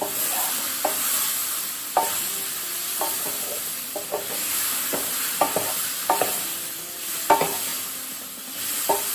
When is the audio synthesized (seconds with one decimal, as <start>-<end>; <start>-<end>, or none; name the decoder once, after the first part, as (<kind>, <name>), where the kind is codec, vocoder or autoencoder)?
1.4-5.9 (vocoder, BigVGAN v2)